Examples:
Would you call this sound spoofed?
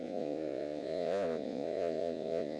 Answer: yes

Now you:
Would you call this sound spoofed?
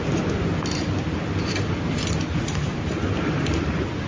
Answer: no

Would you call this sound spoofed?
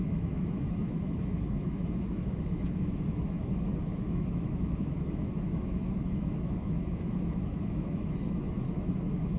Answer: yes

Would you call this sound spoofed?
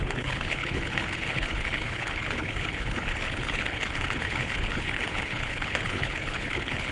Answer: yes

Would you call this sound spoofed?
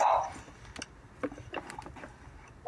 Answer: no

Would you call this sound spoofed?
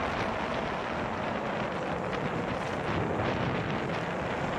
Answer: no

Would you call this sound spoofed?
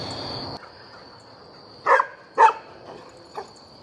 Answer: no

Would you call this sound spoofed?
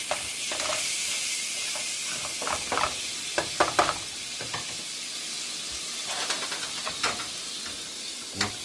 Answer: no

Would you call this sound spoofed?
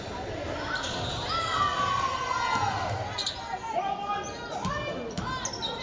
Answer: no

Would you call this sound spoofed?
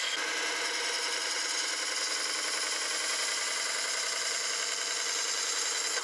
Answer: no